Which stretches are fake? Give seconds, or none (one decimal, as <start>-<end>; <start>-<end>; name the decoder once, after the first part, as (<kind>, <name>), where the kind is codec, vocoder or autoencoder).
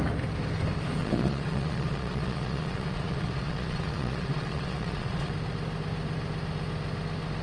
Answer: 1.0-5.3 (vocoder, Vocos)